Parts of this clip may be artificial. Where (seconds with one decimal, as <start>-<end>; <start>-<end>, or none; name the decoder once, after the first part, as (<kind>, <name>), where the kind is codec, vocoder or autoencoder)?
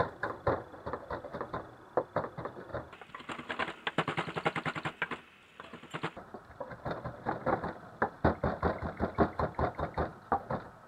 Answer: 0.0-1.3 (vocoder, BigVGAN v2); 2.3-2.7; 6.8-7.4; 9.1-10.9